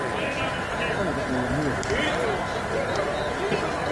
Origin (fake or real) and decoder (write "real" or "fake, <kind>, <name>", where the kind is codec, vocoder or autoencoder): real